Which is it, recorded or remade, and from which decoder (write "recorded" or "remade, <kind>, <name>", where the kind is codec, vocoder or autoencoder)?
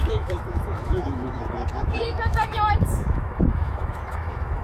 remade, autoencoder, DAC-VAE